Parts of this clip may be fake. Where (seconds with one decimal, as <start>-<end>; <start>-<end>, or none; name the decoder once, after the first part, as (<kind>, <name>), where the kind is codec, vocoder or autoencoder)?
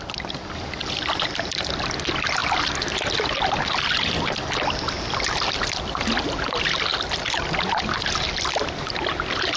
none